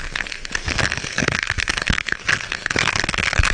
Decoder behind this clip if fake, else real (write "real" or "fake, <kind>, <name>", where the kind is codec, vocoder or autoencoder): fake, codec, SNAC